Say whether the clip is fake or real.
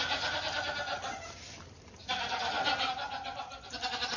real